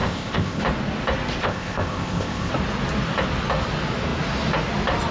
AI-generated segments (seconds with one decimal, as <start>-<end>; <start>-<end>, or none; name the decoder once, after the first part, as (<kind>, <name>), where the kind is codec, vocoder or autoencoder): 0.0-0.6 (codec, ZipCodec); 1.4-2.5

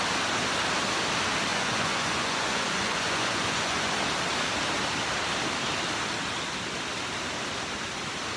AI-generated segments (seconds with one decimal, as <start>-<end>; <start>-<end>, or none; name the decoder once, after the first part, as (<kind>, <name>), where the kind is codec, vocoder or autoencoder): 1.5-3.9 (vocoder, Vocos)

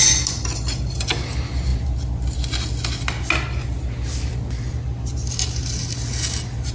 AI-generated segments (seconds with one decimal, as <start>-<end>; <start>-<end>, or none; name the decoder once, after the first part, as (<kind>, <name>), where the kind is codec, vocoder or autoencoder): none

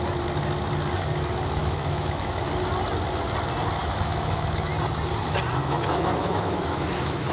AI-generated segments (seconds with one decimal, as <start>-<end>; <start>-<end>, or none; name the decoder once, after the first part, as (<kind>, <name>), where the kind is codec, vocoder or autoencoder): 1.6-2.4 (autoencoder, DAC-VAE); 3.8-4.7; 5.6-7.3

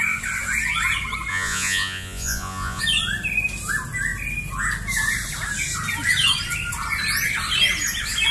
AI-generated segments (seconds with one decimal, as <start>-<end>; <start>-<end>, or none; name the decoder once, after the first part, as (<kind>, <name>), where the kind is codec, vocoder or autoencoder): 1.3-2.8 (vocoder, Vocos)

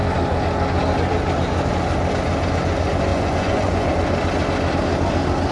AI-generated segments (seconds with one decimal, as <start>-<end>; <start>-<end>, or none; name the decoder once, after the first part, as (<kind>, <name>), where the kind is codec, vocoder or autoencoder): 3.1-3.9 (vocoder, Vocos)